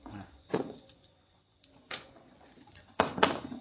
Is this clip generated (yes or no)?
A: yes